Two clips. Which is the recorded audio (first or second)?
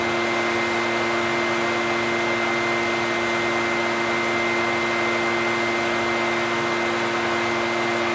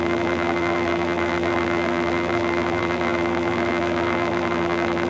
first